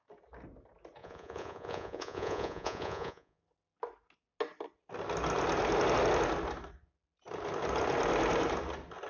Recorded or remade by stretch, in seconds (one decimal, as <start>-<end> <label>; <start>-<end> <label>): 0.0-1.0 recorded; 1.0-3.4 remade; 3.4-9.1 recorded